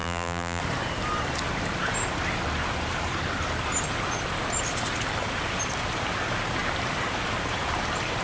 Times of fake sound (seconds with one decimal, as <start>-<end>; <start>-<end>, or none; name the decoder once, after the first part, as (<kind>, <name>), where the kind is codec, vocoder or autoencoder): 0.0-0.6 (vocoder, BigVGAN v2)